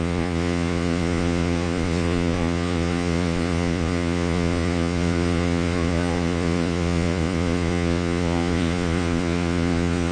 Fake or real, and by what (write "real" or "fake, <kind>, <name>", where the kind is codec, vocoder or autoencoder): fake, vocoder, Vocos